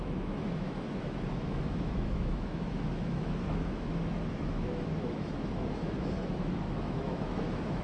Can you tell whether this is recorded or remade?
remade